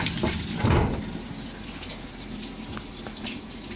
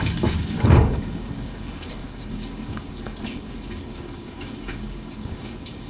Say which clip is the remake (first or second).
second